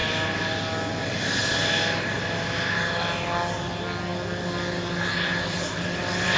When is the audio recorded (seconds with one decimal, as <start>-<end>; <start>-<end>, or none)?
0.0-6.4